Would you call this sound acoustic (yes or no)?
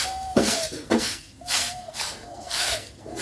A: no